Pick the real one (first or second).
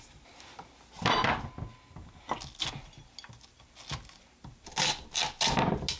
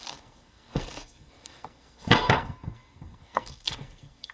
first